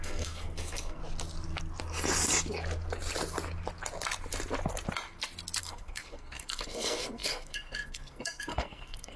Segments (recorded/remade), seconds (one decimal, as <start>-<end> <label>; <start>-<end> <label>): 0.0-1.0 remade; 1.0-5.6 recorded; 5.6-9.2 remade